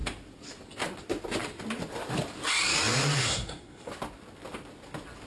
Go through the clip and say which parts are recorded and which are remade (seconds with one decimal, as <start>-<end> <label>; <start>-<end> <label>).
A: 0.0-3.2 recorded; 3.2-3.9 remade; 3.9-5.3 recorded